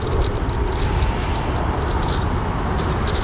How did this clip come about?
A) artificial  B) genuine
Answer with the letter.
B